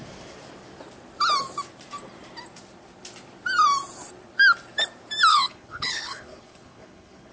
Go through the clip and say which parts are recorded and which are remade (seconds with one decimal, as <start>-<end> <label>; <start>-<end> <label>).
0.0-5.3 recorded; 5.3-7.3 remade